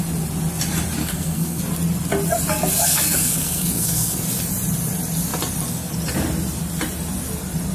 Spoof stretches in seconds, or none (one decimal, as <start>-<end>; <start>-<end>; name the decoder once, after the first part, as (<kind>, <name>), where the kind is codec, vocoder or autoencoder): 1.0-1.6 (codec, SNAC); 2.8-4.2